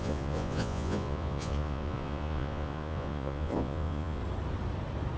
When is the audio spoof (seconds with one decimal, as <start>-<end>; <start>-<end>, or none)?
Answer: 0.0-4.2